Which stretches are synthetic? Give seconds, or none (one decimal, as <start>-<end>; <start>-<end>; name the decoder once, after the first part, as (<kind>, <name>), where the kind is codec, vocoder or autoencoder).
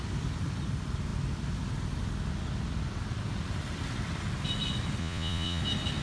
5.0-5.6 (vocoder, Vocos)